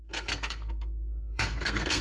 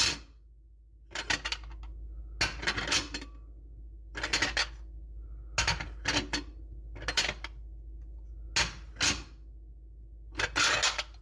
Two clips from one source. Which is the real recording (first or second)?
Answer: second